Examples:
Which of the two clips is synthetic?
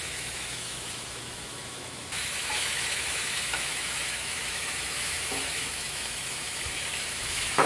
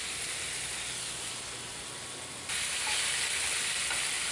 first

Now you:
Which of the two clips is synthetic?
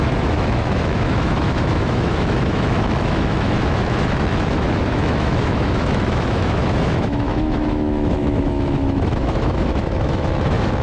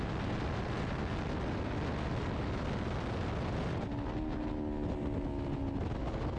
first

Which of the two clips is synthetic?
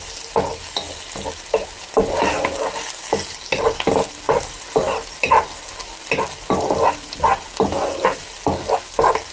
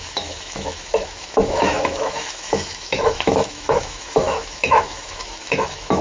second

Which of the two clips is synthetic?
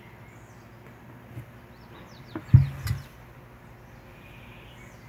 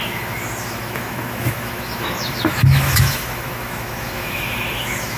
second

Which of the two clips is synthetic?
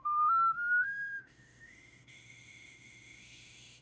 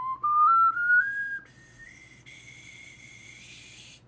first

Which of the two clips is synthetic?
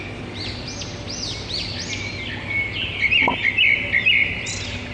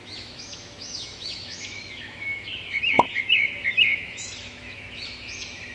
second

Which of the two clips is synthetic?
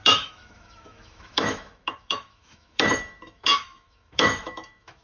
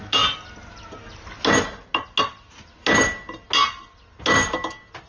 first